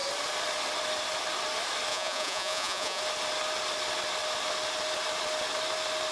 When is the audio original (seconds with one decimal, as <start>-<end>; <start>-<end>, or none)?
0.0-1.9; 3.0-6.1